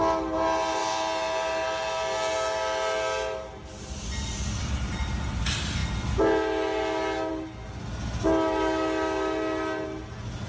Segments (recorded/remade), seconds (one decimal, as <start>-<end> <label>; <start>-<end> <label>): 0.0-10.5 recorded